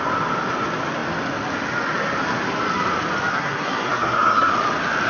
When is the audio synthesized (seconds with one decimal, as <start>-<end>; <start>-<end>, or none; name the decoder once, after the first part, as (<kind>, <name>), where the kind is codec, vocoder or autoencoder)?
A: 3.3-4.5 (codec, SNAC)